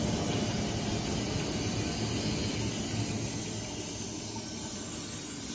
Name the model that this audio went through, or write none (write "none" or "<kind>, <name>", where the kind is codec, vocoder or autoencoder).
none